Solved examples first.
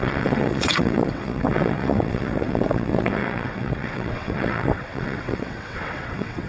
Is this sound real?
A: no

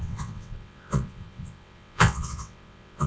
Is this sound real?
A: no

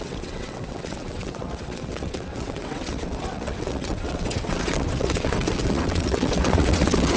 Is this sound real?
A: no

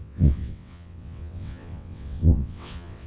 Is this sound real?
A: no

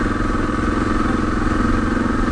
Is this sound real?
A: yes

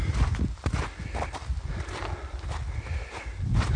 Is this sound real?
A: yes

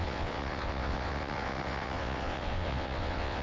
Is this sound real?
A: no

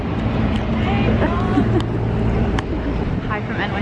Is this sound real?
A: yes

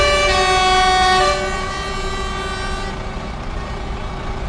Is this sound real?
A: yes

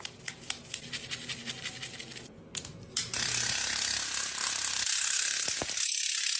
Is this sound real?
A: yes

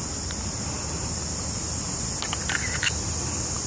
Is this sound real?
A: yes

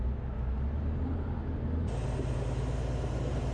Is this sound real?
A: yes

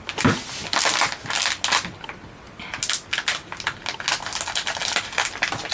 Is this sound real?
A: yes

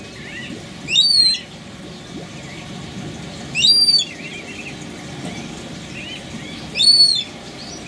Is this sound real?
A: yes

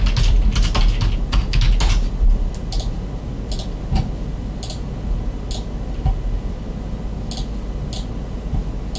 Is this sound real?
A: yes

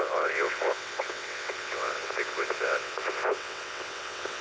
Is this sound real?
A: no